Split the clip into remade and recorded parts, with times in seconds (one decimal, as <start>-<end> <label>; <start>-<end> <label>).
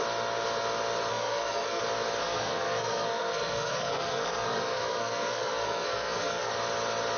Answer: 0.0-1.1 recorded; 1.1-1.8 remade; 1.8-2.2 recorded; 2.2-6.5 remade; 6.5-7.2 recorded